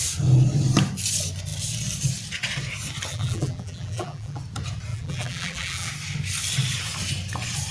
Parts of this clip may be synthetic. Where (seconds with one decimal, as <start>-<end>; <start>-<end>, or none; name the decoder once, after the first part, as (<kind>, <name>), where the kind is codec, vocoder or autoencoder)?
3.1-4.4 (vocoder, BigVGAN v2); 4.9-5.9